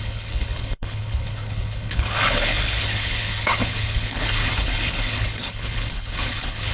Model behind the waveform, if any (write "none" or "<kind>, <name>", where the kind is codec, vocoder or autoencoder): codec, HILCodec